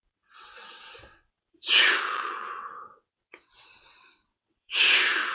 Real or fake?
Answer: fake